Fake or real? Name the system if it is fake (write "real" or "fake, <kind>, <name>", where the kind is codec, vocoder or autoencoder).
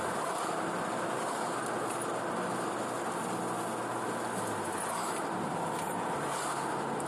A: real